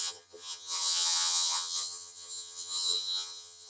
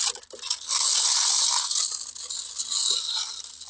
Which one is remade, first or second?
first